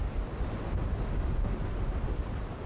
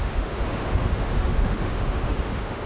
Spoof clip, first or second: second